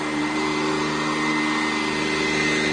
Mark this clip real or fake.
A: real